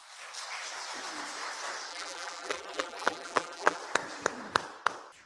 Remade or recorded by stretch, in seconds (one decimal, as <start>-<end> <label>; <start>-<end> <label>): 0.0-1.9 recorded; 1.9-3.8 remade; 3.8-5.3 recorded